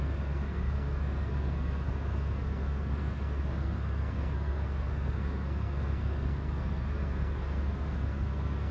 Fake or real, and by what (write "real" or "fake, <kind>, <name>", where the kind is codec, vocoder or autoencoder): fake, codec, SNAC